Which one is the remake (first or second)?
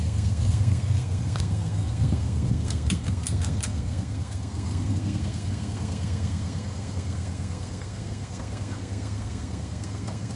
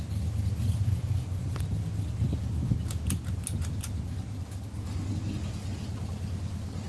first